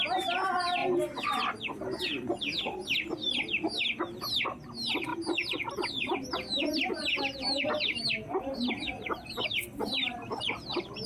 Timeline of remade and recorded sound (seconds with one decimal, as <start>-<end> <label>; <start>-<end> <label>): 0.0-11.1 recorded